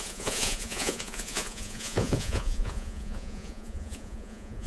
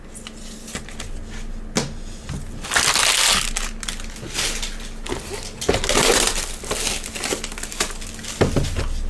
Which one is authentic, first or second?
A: second